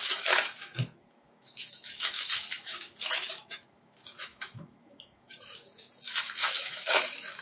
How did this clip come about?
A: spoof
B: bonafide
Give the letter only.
A